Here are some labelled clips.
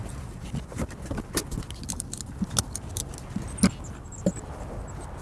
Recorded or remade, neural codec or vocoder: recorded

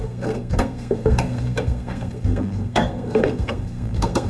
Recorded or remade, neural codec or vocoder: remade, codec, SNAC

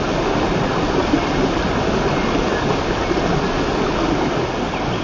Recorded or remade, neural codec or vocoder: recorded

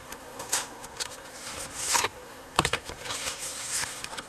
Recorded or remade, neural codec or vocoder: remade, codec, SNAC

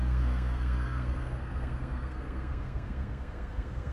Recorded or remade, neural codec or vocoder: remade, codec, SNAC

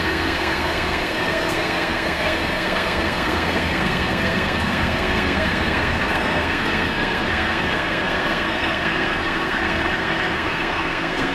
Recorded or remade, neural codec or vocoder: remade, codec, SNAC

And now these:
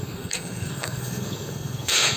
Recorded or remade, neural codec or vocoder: remade, codec, SNAC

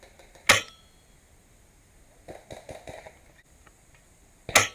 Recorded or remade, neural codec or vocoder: recorded